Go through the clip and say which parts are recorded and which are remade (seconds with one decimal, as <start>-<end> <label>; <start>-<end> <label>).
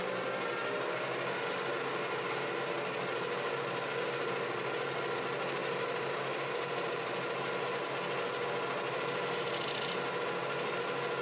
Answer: 0.0-5.6 recorded; 5.6-7.9 remade; 7.9-11.2 recorded